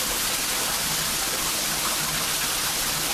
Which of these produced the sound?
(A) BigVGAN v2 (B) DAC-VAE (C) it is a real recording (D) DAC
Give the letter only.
A